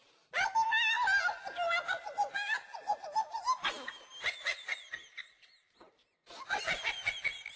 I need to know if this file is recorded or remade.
recorded